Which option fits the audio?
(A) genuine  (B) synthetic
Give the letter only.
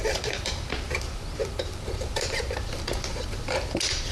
B